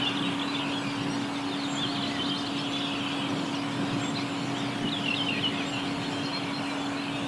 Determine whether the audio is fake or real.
real